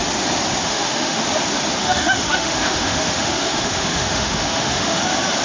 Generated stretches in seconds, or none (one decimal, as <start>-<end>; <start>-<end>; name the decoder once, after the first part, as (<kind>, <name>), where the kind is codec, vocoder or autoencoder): 0.6-1.2 (autoencoder, DAC-VAE); 1.8-5.0